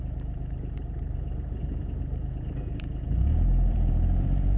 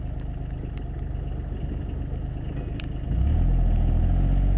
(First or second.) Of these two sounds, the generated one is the first